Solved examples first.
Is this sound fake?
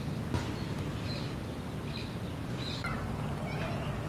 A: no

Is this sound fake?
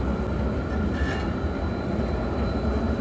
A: no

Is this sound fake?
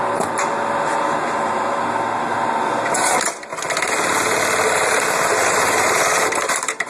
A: no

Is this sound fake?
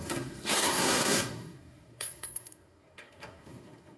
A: yes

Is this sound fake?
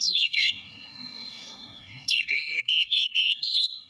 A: yes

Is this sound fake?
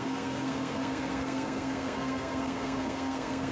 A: yes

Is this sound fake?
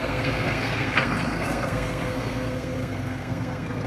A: yes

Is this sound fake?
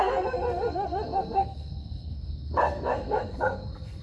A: yes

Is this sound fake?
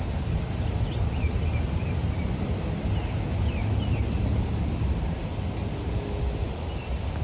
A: no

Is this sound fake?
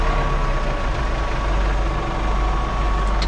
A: no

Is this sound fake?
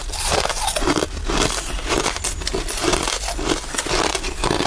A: no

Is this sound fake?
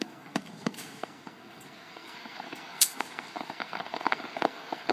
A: yes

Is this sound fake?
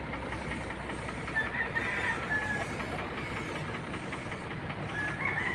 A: no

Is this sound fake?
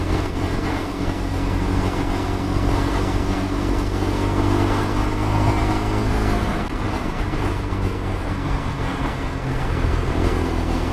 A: yes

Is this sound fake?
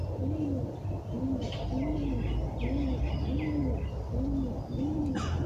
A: no